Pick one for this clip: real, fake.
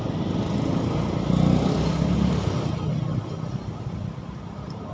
real